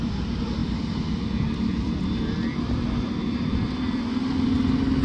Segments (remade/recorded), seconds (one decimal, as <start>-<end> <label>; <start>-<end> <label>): 0.0-5.0 recorded